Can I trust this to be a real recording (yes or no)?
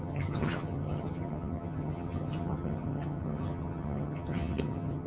no